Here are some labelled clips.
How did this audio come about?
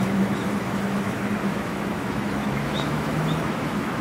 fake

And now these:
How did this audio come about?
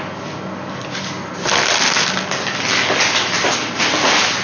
real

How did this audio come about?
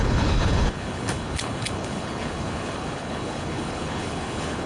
fake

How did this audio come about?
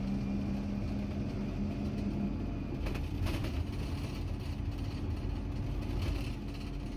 real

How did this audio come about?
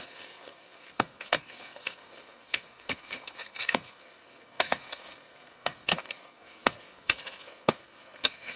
fake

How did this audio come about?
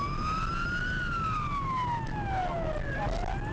real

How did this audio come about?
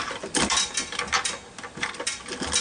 real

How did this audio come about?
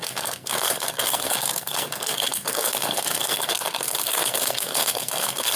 fake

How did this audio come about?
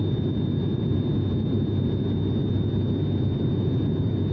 real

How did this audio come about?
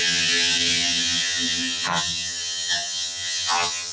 fake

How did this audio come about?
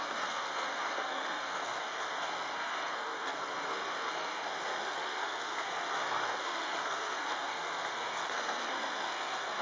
fake